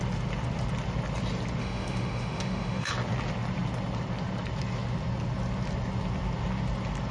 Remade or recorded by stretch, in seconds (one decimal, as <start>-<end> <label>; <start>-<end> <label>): 0.0-1.6 recorded; 1.6-2.9 remade; 2.9-7.1 recorded